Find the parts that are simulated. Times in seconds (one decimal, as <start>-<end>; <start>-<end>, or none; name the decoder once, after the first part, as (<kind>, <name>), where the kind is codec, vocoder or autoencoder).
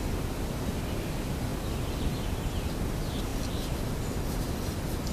3.3-5.1 (vocoder, BigVGAN v2)